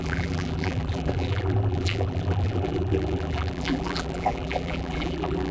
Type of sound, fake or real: fake